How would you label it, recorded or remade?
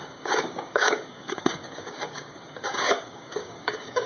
remade